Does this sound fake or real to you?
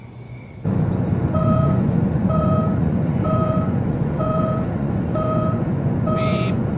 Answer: fake